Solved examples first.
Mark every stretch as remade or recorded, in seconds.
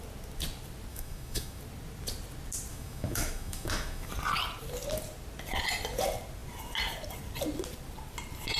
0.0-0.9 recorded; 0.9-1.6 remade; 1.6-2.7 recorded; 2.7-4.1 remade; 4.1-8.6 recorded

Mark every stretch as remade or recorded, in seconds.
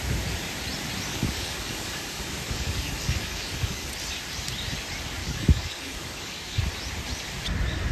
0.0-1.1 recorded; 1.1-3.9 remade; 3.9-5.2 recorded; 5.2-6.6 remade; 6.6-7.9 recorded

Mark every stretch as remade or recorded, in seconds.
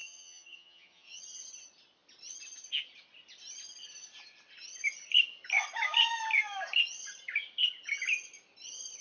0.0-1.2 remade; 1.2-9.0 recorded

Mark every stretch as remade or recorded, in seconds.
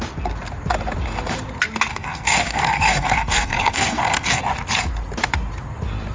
0.0-1.9 recorded; 1.9-4.4 remade; 4.4-6.1 recorded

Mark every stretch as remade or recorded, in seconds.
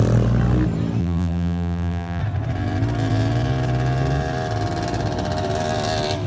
0.0-1.0 recorded; 1.0-2.2 remade; 2.2-6.3 recorded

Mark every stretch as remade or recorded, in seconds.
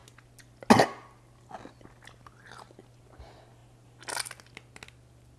0.0-5.4 recorded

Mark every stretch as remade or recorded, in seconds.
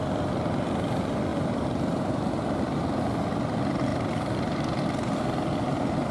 0.0-1.3 recorded; 1.3-2.3 remade; 2.3-3.9 recorded; 3.9-5.2 remade; 5.2-6.1 recorded